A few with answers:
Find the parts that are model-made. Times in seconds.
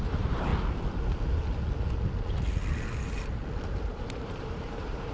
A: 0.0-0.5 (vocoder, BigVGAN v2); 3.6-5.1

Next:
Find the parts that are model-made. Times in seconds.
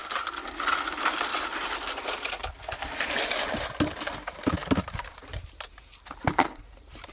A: 1.3-2.3 (vocoder, BigVGAN v2); 4.6-7.1